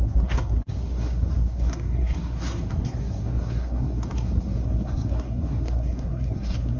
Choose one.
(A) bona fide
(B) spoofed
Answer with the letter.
B